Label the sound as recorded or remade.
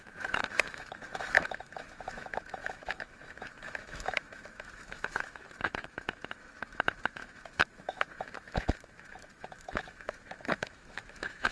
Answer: remade